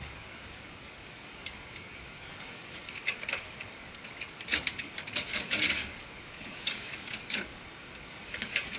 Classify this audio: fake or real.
fake